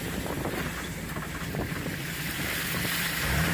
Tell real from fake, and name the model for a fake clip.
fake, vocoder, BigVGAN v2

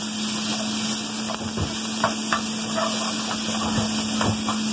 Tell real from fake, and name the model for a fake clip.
real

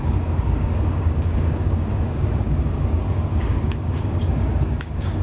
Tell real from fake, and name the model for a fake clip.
fake, codec, DAC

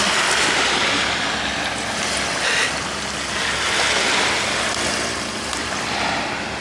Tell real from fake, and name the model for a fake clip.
real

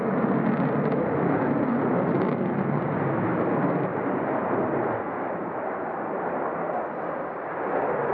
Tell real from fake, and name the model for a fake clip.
real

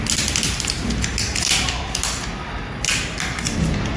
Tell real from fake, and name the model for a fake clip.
real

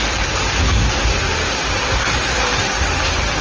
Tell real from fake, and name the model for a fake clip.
fake, vocoder, BigVGAN v2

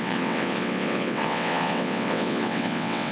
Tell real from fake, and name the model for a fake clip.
fake, vocoder, WaveNeXt